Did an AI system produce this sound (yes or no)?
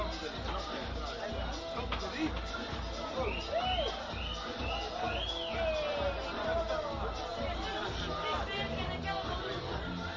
no